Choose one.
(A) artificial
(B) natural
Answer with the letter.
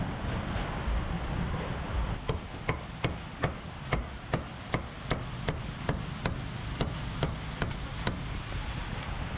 B